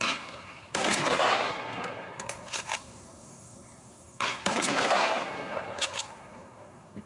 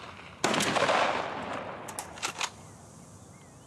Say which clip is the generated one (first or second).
first